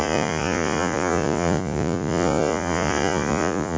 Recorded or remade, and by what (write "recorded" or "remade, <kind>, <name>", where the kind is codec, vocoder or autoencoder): remade, vocoder, Vocos